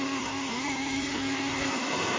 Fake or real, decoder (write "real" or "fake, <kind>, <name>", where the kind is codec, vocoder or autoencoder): fake, codec, SNAC